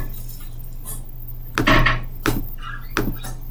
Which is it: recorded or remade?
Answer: recorded